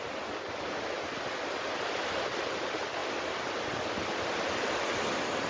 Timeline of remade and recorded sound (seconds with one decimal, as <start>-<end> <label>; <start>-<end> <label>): 0.0-5.5 recorded